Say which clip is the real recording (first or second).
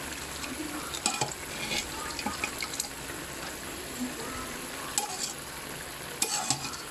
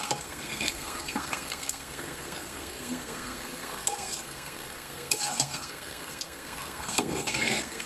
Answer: first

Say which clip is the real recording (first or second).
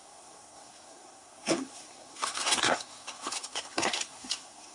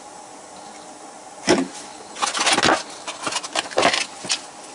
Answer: second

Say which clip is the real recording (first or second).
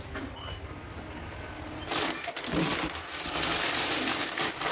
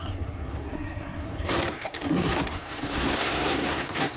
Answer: first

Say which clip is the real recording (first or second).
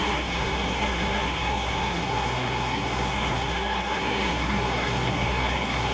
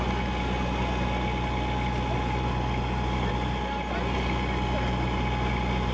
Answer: second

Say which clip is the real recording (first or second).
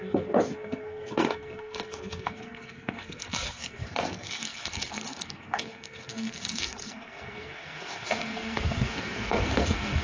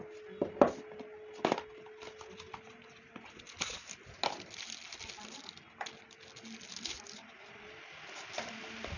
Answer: second